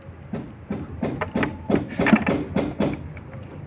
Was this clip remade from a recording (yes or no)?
no